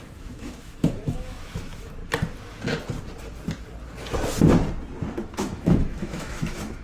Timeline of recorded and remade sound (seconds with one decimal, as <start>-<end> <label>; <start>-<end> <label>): 0.0-2.0 remade; 2.0-5.3 recorded; 5.3-6.8 remade